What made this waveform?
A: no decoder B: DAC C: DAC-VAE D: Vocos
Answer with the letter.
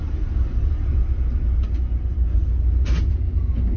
A